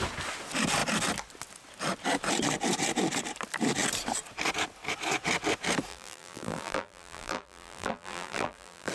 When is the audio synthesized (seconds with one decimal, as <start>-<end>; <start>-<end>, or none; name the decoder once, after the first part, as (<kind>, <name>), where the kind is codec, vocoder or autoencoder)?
5.9-8.9 (vocoder, BigVGAN v2)